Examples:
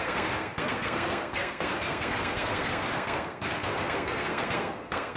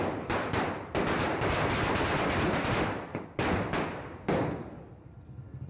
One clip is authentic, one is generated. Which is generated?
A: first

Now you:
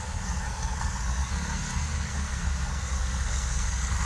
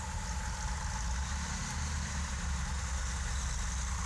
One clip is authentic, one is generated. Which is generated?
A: first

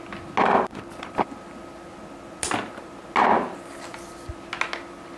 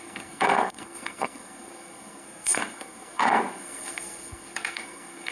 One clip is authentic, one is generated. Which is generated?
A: second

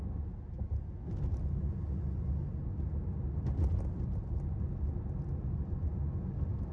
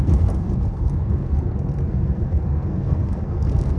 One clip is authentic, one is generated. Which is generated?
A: second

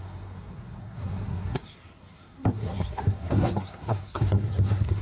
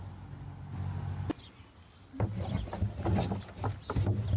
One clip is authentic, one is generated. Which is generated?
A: first